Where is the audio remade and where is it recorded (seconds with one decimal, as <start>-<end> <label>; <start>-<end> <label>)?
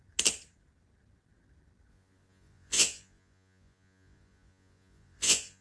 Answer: 0.0-1.9 recorded; 1.9-5.6 remade